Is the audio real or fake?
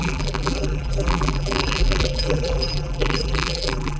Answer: fake